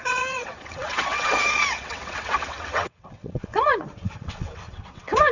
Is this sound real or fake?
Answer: fake